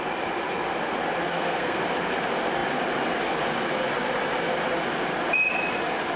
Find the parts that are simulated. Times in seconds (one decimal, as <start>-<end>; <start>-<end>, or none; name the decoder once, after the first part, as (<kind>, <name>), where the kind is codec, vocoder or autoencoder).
1.3-1.8 (codec, SNAC)